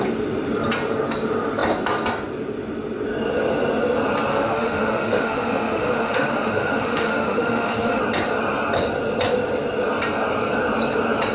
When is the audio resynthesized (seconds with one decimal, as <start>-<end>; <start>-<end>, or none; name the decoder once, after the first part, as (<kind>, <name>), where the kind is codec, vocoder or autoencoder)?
4.3-8.0 (autoencoder, DAC-VAE)